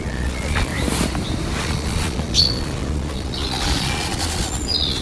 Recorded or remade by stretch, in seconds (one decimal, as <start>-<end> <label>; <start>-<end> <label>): 0.0-0.7 remade; 0.7-1.6 recorded; 1.6-5.0 remade